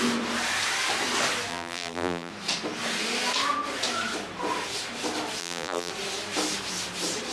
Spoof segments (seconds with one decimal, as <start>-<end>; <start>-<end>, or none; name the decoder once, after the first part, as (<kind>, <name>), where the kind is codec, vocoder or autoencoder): 1.5-2.3 (vocoder, BigVGAN v2); 5.4-5.9